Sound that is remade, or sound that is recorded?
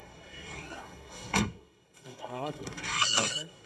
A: remade